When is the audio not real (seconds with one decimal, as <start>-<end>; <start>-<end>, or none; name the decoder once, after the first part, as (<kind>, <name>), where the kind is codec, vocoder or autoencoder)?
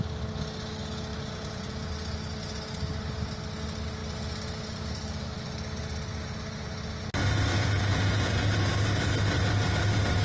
1.1-1.9 (vocoder, Vocos); 7.5-8.3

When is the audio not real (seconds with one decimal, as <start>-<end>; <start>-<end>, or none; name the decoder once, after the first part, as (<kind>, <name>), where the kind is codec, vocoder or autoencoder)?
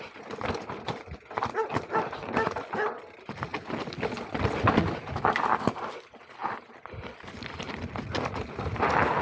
none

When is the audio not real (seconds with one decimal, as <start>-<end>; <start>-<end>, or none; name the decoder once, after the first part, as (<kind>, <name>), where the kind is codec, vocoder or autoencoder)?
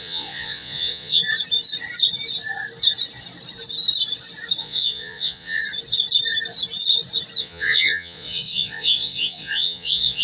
0.0-1.2 (vocoder, Vocos); 4.6-5.6; 7.4-10.2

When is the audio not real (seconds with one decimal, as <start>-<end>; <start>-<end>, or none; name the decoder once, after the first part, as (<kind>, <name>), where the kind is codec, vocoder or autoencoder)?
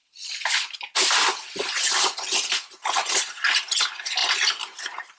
none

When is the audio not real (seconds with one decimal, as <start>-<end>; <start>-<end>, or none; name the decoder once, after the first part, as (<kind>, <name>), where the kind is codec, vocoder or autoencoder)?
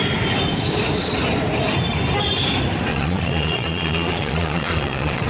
2.9-5.3 (vocoder, Vocos)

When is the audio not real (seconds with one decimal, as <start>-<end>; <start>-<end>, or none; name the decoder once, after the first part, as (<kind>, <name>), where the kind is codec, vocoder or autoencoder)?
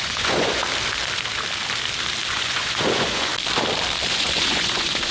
0.0-0.6 (vocoder, Vocos); 2.3-3.3; 4.1-5.1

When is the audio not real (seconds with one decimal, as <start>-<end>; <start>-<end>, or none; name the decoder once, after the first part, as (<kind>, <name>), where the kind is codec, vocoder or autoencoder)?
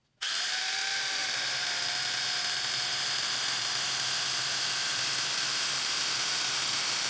none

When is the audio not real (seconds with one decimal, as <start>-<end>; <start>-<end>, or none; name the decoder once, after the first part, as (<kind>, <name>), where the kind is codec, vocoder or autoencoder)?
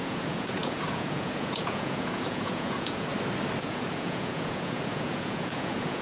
0.0-3.1 (vocoder, Vocos); 3.6-6.0